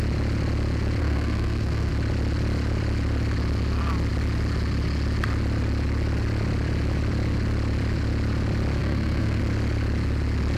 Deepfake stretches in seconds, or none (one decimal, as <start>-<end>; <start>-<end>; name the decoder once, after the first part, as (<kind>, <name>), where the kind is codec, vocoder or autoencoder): 1.0-1.9 (codec, SNAC); 8.8-9.4